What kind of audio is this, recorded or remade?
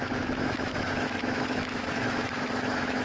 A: remade